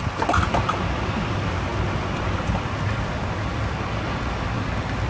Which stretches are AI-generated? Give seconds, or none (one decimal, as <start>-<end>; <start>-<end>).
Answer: none